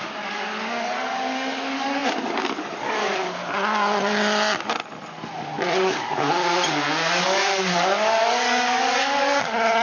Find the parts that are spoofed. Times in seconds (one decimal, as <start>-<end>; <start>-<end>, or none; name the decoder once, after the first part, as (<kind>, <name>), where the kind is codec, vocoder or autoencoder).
0.0-3.4 (codec, DAC); 5.8-6.4; 7.2-9.8